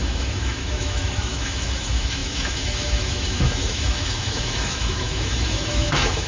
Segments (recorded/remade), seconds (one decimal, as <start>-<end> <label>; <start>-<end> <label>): 0.0-6.3 remade